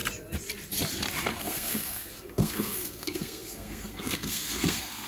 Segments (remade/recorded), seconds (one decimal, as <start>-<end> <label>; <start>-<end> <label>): 0.0-1.4 recorded; 1.4-5.1 remade